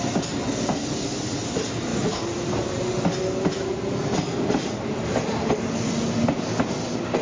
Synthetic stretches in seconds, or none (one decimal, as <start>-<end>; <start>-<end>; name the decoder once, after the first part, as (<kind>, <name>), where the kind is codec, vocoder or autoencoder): none